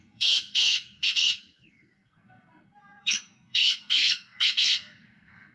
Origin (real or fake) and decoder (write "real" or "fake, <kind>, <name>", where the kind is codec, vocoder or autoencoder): fake, codec, SNAC